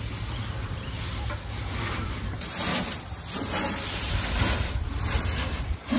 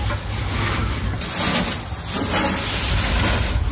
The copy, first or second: first